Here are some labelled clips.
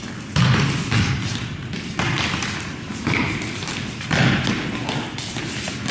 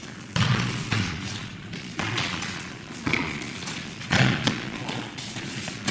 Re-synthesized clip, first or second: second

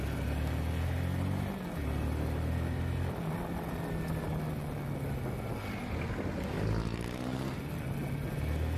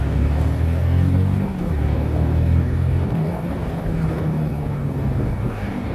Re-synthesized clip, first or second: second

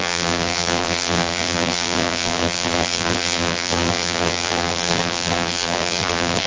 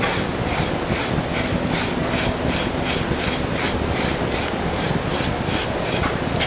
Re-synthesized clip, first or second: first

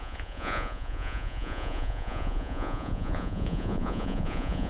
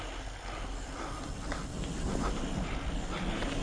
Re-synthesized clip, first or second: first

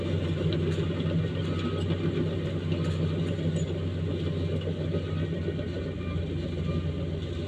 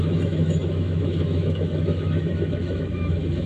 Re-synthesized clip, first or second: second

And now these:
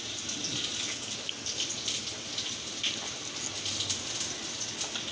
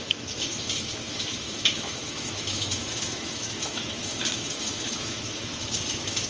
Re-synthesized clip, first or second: second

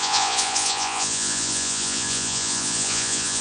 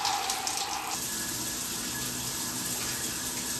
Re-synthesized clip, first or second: first